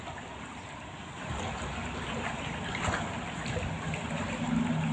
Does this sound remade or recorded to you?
recorded